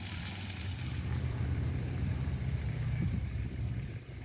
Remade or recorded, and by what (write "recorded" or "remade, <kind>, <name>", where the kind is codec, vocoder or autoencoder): remade, vocoder, BigVGAN v2